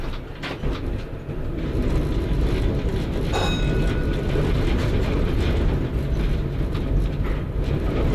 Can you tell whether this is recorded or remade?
recorded